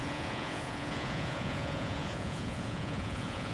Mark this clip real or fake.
fake